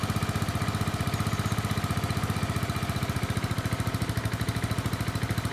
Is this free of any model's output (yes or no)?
yes